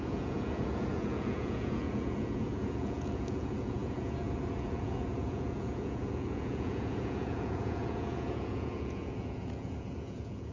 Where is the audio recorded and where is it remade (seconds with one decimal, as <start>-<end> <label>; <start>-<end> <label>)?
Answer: 0.0-10.5 remade